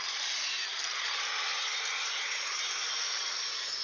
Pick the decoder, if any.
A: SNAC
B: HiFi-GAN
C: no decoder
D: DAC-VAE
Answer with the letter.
C